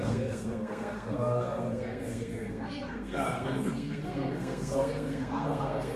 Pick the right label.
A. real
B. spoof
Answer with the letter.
B